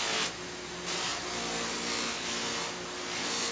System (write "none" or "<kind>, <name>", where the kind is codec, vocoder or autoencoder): none